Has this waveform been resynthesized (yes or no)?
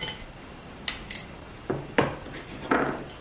no